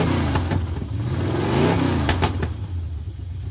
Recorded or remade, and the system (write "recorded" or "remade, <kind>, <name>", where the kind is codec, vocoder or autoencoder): recorded